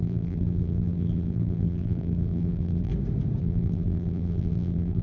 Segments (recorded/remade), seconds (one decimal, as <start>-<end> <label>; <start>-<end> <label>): 0.0-2.9 remade; 2.9-3.4 recorded; 3.4-5.0 remade